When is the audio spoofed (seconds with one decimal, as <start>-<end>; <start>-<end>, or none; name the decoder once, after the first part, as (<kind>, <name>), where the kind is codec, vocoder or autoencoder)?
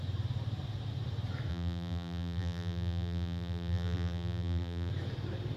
1.5-4.9 (vocoder, BigVGAN v2)